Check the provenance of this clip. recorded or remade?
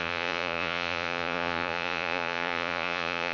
remade